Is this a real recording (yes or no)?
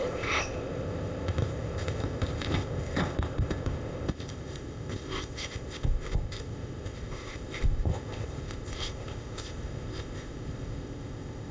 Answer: no